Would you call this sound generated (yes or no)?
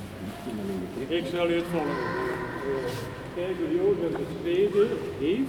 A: no